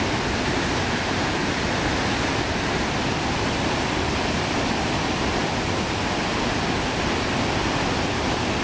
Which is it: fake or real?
real